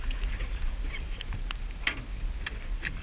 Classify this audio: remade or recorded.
recorded